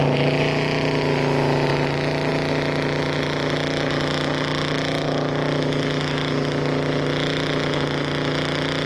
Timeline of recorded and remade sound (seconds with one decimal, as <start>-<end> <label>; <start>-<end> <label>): 0.0-8.9 recorded